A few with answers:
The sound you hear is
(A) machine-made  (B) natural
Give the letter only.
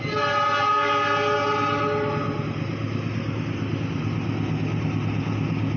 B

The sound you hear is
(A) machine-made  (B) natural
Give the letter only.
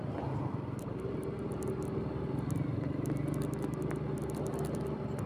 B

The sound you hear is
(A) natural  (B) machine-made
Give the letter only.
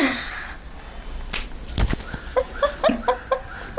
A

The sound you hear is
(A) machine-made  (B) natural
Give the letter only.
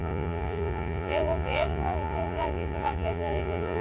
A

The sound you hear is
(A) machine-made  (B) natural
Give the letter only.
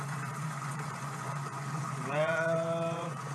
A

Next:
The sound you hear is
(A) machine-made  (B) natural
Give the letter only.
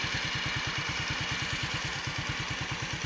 B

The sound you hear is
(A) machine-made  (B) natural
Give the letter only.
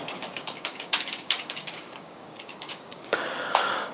A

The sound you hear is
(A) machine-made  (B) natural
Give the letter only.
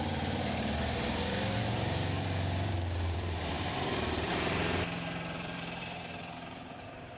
A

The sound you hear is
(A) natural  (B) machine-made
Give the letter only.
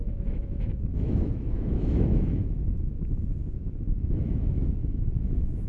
B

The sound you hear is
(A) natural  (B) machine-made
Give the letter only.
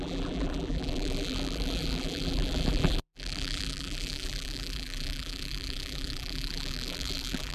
B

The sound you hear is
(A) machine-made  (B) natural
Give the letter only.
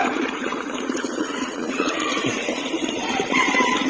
A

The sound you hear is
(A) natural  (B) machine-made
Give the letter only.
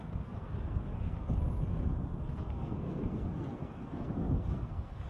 B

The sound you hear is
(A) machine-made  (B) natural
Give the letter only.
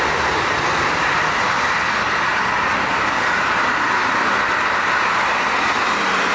B